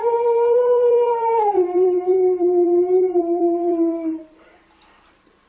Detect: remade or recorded remade